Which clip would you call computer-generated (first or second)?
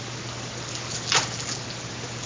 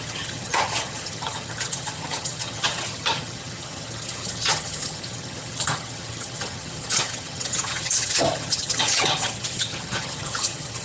second